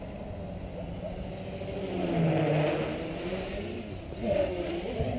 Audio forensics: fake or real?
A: real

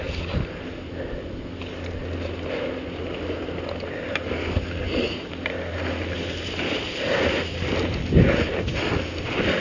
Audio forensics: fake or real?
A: real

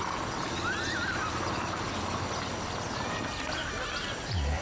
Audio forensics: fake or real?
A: real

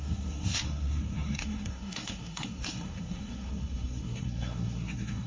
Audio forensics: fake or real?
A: fake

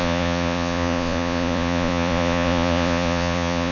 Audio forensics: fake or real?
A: fake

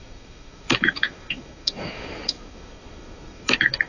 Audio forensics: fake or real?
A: fake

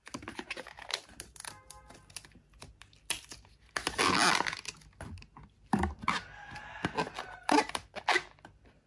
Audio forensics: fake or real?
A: real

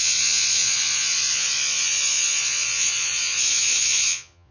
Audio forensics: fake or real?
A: fake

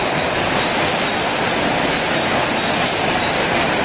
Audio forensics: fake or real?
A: real